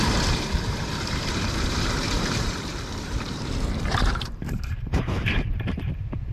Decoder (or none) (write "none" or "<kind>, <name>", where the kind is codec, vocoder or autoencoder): vocoder, BigVGAN v2